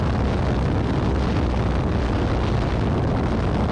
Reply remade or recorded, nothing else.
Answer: recorded